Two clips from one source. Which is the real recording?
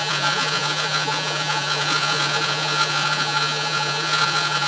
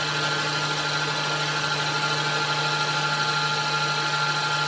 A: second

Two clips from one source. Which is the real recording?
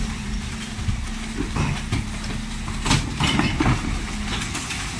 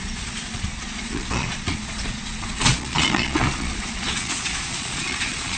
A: first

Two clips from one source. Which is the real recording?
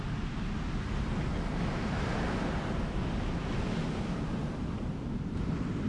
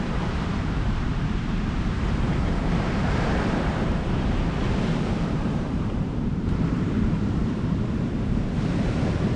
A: first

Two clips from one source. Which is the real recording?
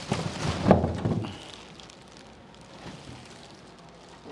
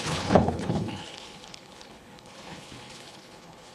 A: first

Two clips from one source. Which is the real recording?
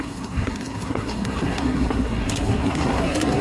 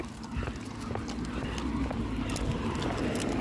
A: second